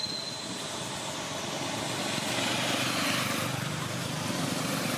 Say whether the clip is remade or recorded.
recorded